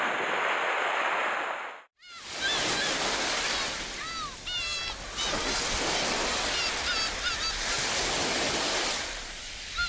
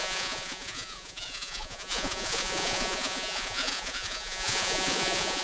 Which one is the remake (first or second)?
second